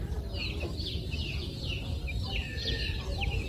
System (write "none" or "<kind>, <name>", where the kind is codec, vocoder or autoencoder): none